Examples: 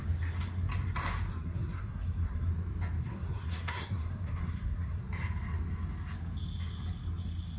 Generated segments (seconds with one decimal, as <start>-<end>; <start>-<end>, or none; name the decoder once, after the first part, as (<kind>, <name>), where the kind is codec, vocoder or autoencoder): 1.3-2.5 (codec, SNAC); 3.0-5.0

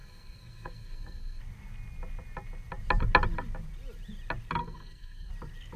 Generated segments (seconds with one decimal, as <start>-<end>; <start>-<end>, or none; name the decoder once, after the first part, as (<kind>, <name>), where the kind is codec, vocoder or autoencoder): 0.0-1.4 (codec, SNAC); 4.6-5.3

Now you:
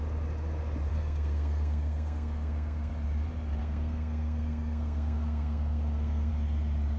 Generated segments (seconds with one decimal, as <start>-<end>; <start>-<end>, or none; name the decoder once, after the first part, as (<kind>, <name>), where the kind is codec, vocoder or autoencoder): 0.9-2.9 (codec, SNAC); 3.6-6.3

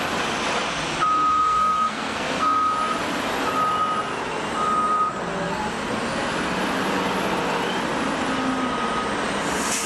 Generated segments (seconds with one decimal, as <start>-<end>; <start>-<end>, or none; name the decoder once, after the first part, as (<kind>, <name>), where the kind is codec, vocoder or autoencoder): 1.3-2.7 (codec, SNAC)

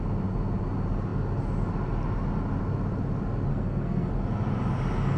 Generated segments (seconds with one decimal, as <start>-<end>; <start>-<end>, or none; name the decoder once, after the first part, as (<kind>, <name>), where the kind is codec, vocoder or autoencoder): 3.5-4.1 (codec, SNAC)

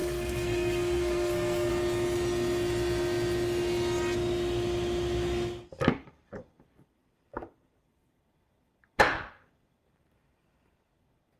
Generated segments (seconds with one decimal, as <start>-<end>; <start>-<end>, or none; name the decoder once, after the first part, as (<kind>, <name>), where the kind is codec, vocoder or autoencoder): 0.0-1.7 (codec, SNAC)

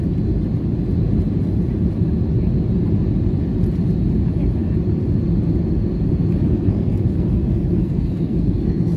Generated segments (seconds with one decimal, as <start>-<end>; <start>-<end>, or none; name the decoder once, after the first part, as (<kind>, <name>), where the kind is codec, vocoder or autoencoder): 6.5-9.0 (codec, SNAC)